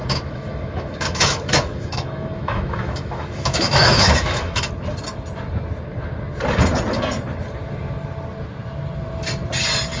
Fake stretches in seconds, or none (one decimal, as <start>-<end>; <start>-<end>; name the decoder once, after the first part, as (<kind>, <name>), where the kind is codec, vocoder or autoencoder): 0.0-4.7 (autoencoder, DAC-VAE)